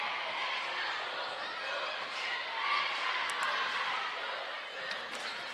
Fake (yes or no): no